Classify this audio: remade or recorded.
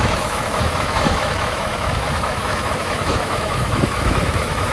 remade